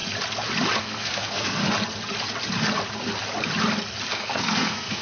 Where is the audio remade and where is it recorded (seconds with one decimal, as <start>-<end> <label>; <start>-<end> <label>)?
0.0-0.8 recorded; 0.8-1.6 remade; 1.6-4.1 recorded; 4.1-5.0 remade